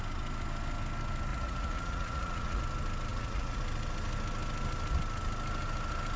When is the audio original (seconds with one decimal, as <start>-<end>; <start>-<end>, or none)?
0.0-1.3; 2.6-3.1; 3.6-6.2